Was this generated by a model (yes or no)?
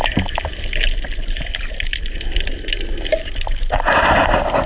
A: no